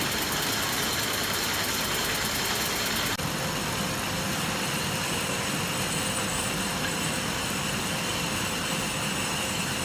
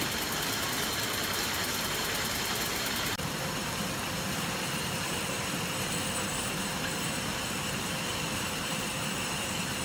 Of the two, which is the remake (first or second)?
second